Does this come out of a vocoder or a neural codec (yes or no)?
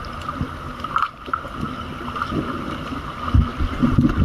no